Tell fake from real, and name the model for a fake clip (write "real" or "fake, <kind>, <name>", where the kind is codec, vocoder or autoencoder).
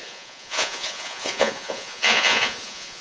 fake, vocoder, Vocos